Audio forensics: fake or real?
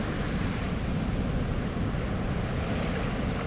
real